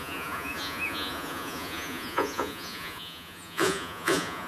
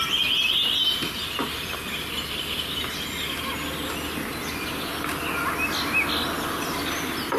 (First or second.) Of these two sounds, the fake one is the first